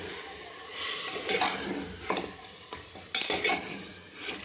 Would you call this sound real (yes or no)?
yes